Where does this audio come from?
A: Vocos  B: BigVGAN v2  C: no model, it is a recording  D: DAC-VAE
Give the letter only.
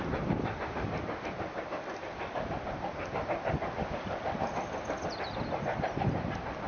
C